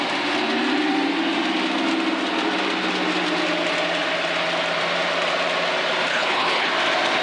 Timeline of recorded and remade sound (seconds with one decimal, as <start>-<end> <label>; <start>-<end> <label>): 0.0-6.1 recorded; 6.1-6.7 remade; 6.7-7.2 recorded